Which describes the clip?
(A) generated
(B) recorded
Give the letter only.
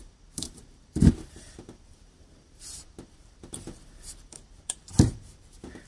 A